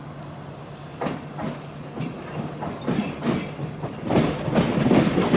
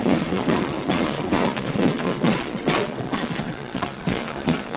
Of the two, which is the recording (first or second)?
first